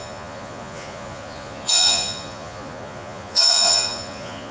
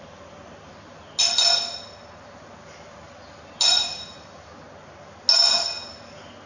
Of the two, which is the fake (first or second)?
first